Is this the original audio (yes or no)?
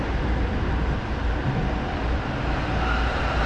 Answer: yes